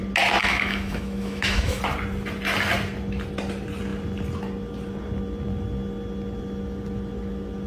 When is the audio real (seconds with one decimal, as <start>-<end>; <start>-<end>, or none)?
0.0-0.4; 1.8-7.7